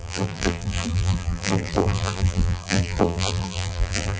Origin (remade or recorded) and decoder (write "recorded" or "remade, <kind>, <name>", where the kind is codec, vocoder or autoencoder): remade, vocoder, BigVGAN v2